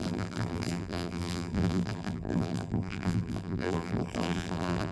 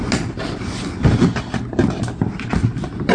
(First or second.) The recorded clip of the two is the second